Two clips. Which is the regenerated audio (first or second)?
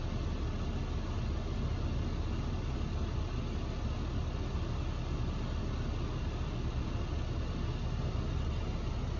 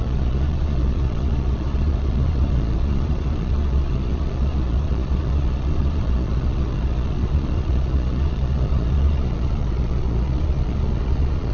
second